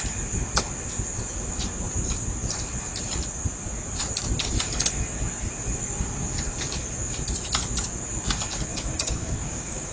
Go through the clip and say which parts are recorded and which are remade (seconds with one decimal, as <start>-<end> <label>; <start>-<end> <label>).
0.0-8.7 recorded; 8.7-9.9 remade